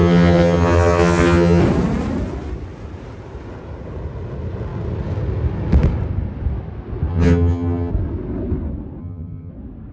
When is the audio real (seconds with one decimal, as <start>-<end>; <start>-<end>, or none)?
1.6-7.1; 7.9-9.0; 9.5-9.9